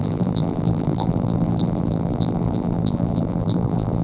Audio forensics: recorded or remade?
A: remade